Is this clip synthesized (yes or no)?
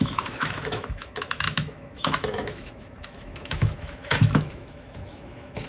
yes